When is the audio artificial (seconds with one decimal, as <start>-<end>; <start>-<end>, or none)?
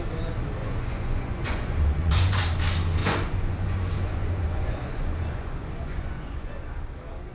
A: 0.6-2.4; 3.0-6.5